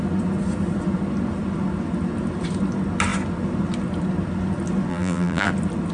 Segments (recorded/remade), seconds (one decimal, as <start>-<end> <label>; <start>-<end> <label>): 0.0-4.9 recorded; 4.9-5.5 remade; 5.5-5.9 recorded